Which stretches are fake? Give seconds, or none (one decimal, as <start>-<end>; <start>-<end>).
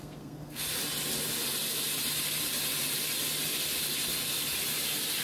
0.0-0.6